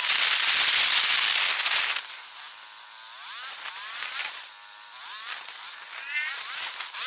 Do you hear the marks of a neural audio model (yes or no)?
no